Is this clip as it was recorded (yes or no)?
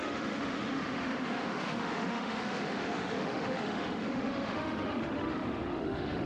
no